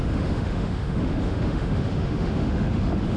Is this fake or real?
fake